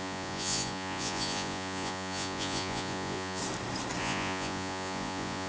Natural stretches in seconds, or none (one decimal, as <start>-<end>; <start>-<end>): 3.4-4.0